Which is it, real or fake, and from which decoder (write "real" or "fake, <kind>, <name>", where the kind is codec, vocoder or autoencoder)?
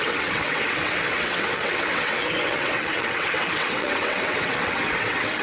fake, vocoder, WaveNeXt